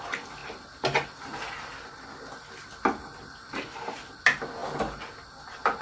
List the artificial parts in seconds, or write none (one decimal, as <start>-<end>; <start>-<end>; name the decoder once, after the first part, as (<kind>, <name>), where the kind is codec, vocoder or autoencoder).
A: none